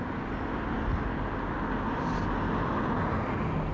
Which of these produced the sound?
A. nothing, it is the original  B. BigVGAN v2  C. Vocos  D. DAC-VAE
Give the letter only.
A